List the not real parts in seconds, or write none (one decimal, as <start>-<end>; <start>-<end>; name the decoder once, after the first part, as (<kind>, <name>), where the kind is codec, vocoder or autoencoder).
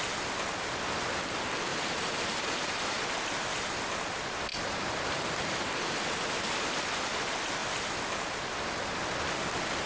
1.7-3.0 (vocoder, BigVGAN v2); 4.5-6.0